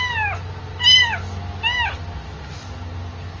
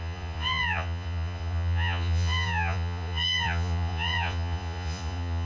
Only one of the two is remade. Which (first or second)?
second